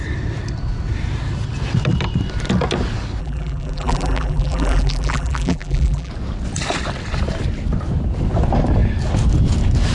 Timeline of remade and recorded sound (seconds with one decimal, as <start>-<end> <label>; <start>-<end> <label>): 0.0-3.2 recorded; 3.2-6.1 remade; 6.1-9.9 recorded